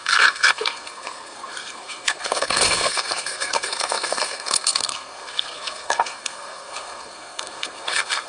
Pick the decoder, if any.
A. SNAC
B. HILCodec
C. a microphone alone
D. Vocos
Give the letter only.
A